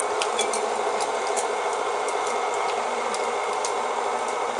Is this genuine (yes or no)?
yes